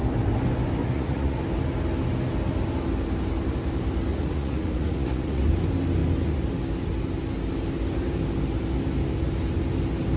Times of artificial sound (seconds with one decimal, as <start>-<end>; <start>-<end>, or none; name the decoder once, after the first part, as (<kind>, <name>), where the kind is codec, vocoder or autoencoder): 0.8-1.4 (vocoder, Vocos); 4.1-5.4